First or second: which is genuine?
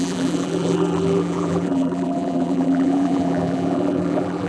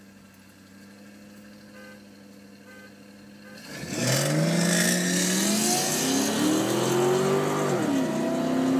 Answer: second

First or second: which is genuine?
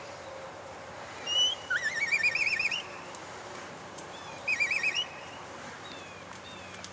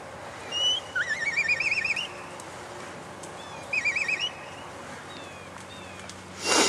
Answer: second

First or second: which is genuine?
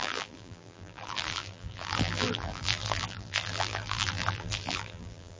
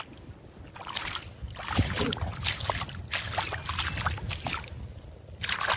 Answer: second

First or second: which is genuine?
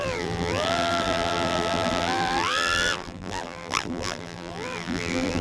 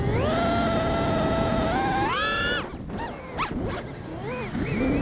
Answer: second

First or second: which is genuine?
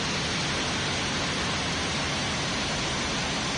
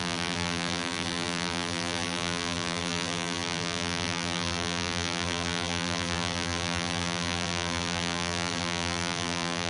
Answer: first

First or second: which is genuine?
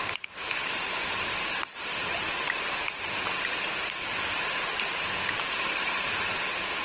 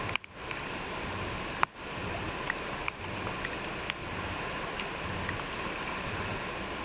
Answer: second